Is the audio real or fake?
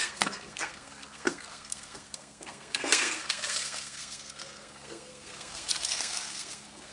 fake